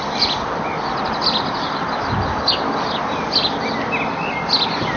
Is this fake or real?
real